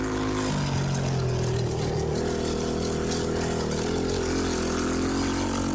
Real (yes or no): yes